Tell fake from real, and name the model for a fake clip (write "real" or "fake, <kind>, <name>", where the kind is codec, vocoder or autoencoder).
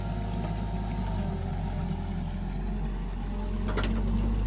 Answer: real